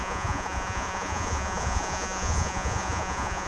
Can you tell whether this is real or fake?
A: fake